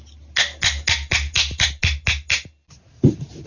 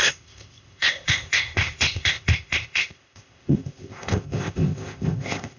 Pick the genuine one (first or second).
first